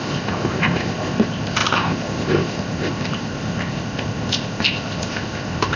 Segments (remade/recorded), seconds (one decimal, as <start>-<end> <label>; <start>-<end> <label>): 0.0-5.8 remade